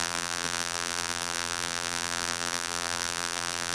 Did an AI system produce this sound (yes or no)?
yes